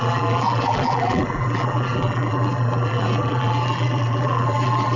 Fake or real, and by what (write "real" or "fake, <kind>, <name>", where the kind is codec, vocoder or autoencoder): fake, vocoder, BigVGAN v2